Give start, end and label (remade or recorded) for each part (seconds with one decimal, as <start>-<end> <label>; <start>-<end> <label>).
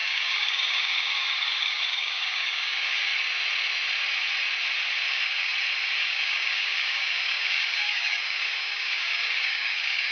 0.0-3.1 remade; 3.1-5.1 recorded; 5.1-5.5 remade; 5.5-6.0 recorded; 6.0-10.1 remade